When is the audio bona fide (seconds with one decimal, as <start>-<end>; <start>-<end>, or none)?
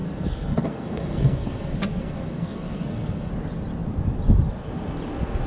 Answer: 3.3-5.5